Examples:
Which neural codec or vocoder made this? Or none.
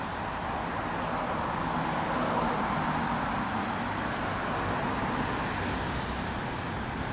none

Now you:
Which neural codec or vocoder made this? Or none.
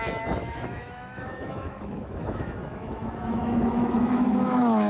autoencoder, DAC-VAE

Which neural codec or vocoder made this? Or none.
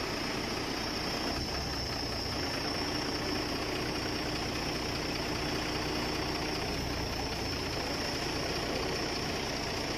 none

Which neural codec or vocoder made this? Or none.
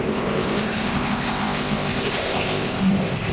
codec, ZipCodec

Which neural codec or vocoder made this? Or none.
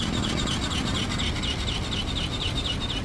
none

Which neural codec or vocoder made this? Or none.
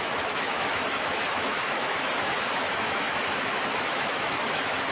autoencoder, DAC-VAE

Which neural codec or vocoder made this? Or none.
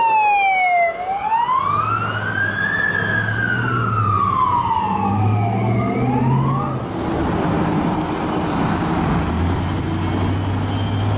none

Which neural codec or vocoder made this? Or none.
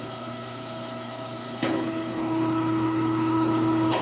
codec, HILCodec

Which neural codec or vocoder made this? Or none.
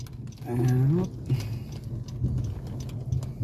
none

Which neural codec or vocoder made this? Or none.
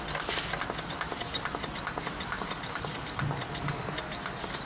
none